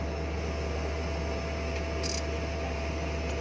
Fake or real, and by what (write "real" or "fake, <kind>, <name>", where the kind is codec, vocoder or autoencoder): real